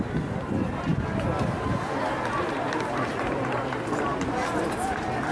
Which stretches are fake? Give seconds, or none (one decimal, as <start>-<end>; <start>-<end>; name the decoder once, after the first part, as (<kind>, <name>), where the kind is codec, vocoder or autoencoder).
none

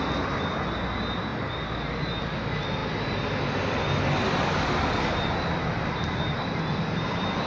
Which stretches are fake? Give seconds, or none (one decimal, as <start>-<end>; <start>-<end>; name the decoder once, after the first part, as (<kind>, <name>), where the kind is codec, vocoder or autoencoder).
none

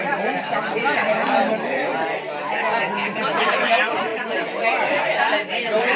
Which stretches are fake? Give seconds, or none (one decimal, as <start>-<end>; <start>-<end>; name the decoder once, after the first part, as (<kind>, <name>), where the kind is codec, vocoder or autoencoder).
0.0-1.9 (vocoder, BigVGAN v2); 3.4-4.1; 4.9-6.0